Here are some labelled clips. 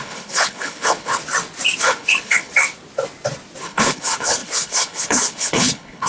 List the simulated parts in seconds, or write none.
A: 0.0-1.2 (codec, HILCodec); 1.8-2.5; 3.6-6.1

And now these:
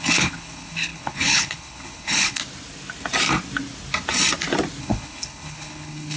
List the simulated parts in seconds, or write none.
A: 0.0-2.4 (codec, HILCodec); 4.8-6.2

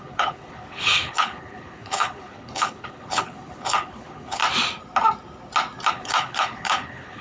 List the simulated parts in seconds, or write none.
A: 0.0-4.4 (codec, HILCodec); 5.9-7.2

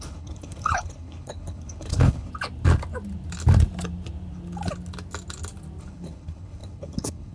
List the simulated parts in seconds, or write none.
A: 0.0-2.3 (codec, HILCodec); 5.8-7.3

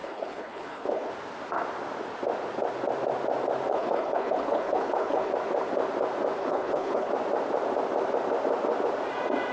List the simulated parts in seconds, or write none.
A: 0.0-1.1 (codec, HILCodec); 3.7-5.3; 6.4-7.1